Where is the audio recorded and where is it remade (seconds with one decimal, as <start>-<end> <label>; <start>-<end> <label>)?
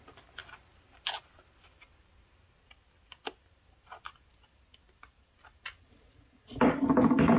0.0-7.4 recorded